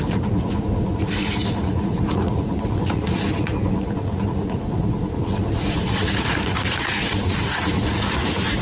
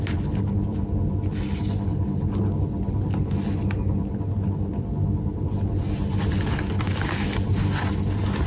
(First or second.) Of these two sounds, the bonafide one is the second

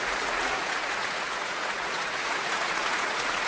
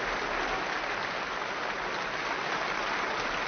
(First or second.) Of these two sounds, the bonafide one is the second